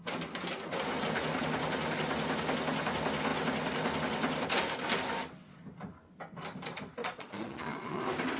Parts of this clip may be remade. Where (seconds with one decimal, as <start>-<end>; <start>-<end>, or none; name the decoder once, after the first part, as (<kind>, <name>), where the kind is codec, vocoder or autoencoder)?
7.0-8.0 (vocoder, Vocos)

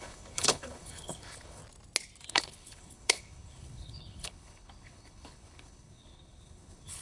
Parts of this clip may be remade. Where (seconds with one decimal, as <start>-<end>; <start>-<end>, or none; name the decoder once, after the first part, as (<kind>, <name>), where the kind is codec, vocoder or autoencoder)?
0.0-1.6 (codec, HILCodec); 2.3-7.0

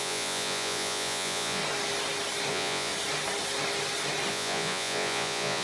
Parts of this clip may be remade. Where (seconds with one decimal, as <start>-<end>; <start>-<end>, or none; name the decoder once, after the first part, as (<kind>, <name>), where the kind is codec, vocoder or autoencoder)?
0.0-1.6 (vocoder, Vocos); 2.5-2.9; 4.3-5.6

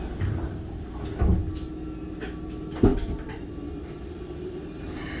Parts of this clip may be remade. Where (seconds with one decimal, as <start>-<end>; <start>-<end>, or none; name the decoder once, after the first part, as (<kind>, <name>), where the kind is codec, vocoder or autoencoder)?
2.9-4.8 (vocoder, BigVGAN v2)

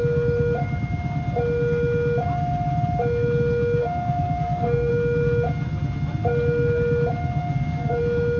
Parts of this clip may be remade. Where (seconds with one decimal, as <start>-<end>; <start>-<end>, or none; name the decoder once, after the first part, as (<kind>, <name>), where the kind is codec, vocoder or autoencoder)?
3.8-4.9 (codec, SNAC); 7.4-8.0

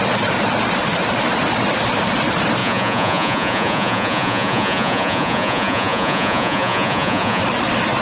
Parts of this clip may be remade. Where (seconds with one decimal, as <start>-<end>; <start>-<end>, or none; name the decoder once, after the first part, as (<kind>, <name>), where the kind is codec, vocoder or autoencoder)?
2.6-7.4 (vocoder, Vocos)

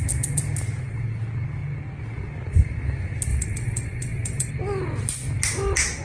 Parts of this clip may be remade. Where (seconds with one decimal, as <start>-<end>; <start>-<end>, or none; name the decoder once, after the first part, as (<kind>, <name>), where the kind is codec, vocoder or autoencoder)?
3.3-4.5 (vocoder, WaveNeXt)